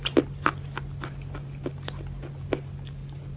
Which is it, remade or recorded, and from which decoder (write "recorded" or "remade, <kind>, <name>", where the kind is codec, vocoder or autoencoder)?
recorded